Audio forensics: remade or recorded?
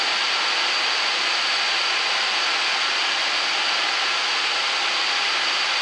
recorded